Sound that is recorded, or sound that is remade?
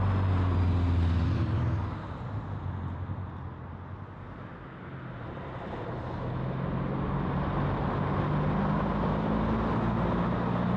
recorded